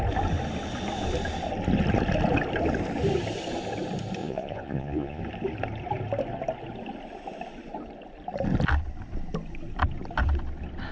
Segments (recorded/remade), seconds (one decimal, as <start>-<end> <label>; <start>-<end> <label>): 0.0-4.2 recorded; 4.2-5.2 remade; 5.2-10.9 recorded

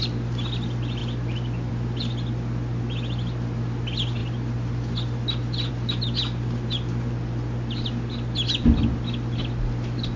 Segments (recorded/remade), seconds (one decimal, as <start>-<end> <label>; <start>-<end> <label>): 0.0-10.2 recorded

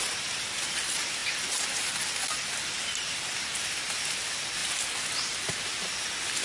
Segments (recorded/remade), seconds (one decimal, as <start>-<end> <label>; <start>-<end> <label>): 0.0-6.4 recorded

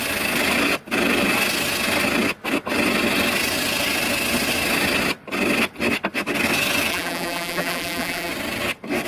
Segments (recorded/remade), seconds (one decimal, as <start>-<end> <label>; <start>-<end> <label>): 0.0-6.9 recorded; 6.9-8.3 remade; 8.3-9.1 recorded

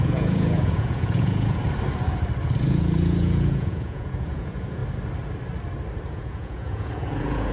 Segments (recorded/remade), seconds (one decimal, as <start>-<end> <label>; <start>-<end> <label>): 0.0-1.6 remade; 1.6-2.6 recorded; 2.6-4.8 remade; 4.8-6.1 recorded; 6.1-7.5 remade

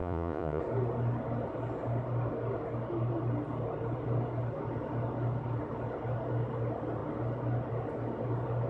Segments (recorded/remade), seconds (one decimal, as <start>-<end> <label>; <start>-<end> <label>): 0.0-0.6 remade; 0.6-8.7 recorded

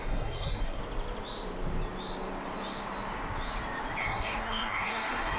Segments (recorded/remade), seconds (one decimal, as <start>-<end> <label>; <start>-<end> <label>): 0.0-0.8 remade; 0.8-4.0 recorded; 4.0-5.4 remade